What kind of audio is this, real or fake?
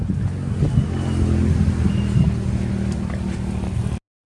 real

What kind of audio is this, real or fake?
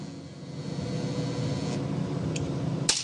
real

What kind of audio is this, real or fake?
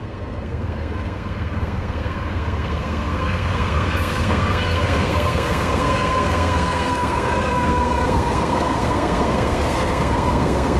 fake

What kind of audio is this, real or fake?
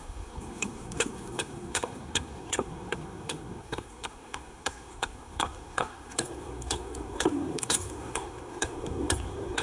fake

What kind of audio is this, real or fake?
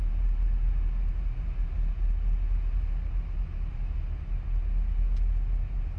real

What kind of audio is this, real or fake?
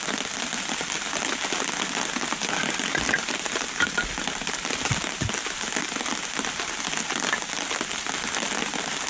real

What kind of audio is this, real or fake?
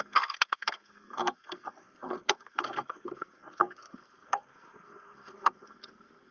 fake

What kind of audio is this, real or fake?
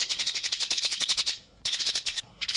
fake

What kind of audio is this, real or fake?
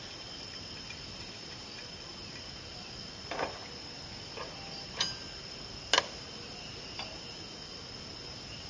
real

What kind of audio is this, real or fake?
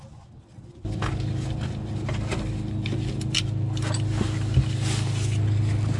real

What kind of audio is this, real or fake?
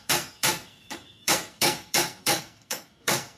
fake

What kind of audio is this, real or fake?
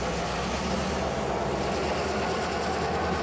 real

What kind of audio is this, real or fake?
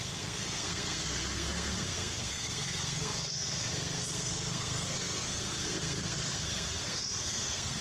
fake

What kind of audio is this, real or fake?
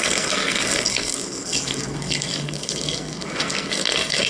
fake